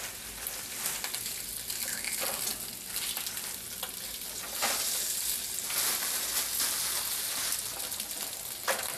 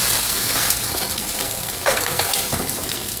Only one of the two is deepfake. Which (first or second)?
second